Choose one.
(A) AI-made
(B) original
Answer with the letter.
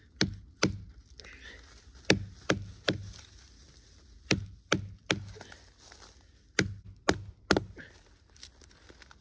B